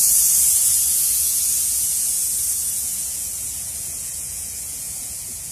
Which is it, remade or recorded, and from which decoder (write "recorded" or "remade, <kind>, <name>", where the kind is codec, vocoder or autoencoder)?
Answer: remade, vocoder, Vocos